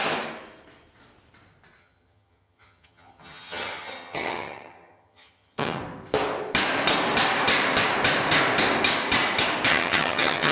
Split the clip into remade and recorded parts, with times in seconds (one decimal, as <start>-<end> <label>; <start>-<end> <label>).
0.0-1.8 recorded; 1.8-5.8 remade; 5.8-9.7 recorded; 9.7-10.5 remade